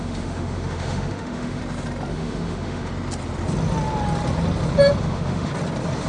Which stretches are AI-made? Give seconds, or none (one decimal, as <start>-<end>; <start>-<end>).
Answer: 0.0-1.6; 2.1-2.9; 5.0-5.5